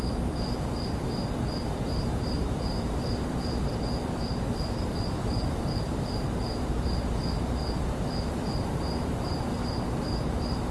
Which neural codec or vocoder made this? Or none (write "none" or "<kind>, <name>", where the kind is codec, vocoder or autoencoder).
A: vocoder, BigVGAN v2